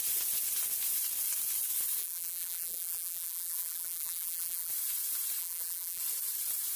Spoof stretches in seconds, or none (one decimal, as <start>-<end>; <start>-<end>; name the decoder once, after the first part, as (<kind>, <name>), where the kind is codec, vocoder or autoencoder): 2.0-4.7 (vocoder, BigVGAN v2); 5.4-6.0